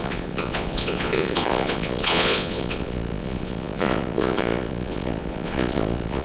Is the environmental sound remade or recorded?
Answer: remade